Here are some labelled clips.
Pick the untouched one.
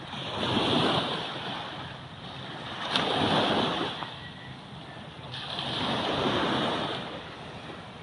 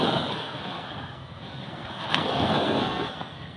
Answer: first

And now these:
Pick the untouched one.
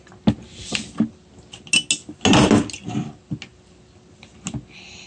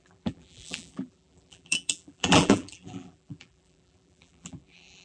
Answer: first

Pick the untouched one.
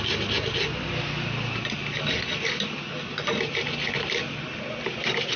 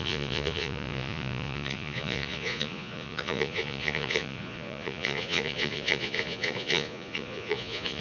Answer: first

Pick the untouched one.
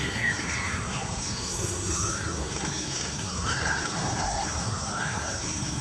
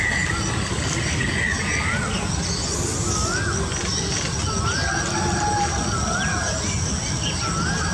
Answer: second